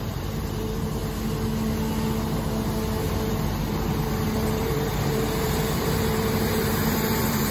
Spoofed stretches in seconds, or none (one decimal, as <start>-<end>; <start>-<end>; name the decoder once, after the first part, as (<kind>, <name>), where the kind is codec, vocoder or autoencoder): 0.0-1.0 (vocoder, BigVGAN v2); 3.0-7.5